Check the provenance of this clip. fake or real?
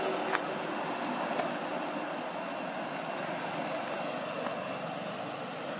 real